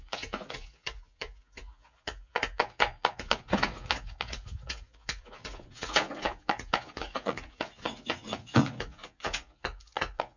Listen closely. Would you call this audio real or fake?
fake